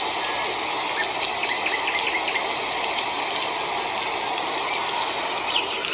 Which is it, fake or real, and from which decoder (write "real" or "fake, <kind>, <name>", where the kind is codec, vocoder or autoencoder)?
real